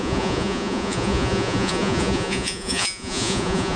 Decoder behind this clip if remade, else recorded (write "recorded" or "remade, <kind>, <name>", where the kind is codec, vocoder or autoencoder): remade, vocoder, Vocos